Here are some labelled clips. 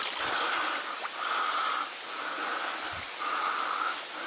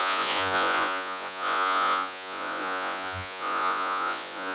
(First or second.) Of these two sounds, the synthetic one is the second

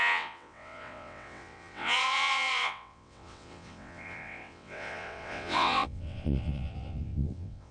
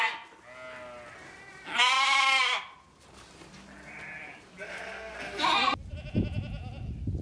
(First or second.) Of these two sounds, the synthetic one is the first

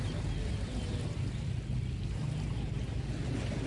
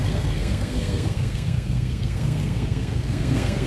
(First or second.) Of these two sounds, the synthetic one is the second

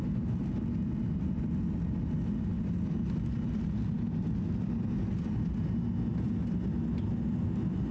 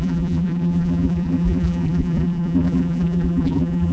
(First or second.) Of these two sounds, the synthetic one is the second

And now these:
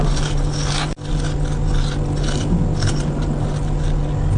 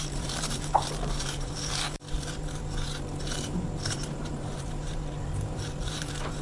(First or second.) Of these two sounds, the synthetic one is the second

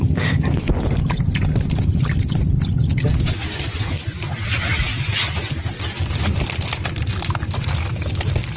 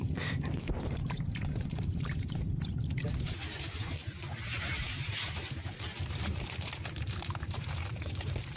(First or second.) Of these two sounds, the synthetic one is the second